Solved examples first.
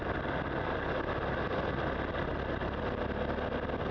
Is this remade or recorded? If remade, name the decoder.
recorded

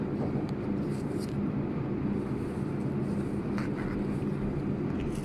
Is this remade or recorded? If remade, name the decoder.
recorded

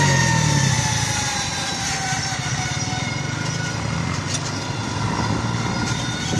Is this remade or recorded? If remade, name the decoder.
recorded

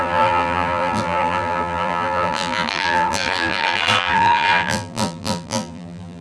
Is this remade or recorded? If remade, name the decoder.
remade, vocoder, BigVGAN v2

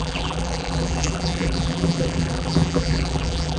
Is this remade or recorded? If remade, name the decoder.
remade, vocoder, BigVGAN v2